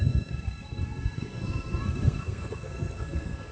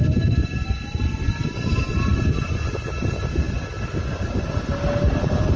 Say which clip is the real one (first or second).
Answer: second